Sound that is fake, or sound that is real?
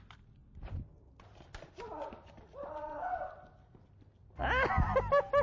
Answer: real